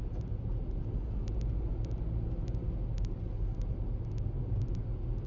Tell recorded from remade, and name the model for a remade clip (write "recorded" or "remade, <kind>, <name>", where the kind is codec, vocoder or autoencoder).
recorded